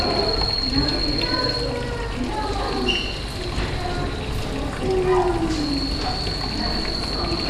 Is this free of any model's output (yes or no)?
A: yes